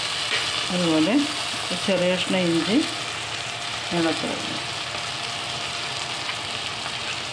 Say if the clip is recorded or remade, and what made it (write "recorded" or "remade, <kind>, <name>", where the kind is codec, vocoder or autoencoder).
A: recorded